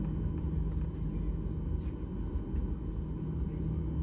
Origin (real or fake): real